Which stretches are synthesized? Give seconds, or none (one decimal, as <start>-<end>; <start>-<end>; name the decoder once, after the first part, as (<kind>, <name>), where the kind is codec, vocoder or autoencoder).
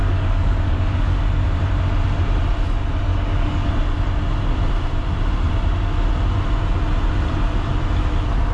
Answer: 0.0-1.2 (codec, DAC); 3.1-3.7